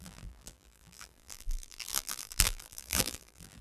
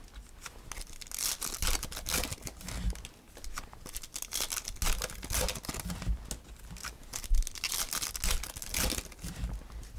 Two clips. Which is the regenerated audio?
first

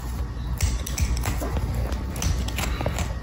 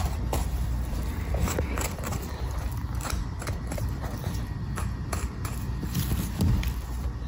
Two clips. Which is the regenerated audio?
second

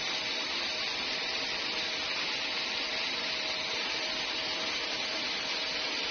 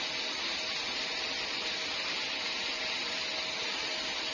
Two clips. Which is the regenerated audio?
first